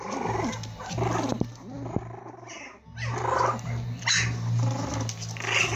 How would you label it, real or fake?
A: real